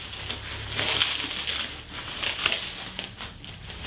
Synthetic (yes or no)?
no